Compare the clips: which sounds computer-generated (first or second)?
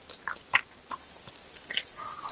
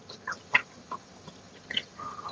second